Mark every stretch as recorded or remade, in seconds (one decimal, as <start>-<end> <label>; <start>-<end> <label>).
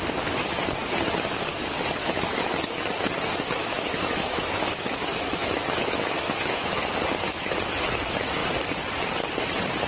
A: 0.0-2.0 recorded; 2.0-2.6 remade; 2.6-3.6 recorded; 3.6-6.9 remade; 6.9-9.9 recorded